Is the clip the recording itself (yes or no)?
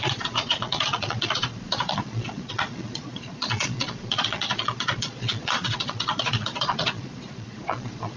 no